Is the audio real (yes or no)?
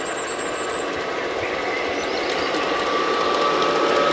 yes